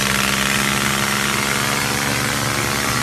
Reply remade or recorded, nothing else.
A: recorded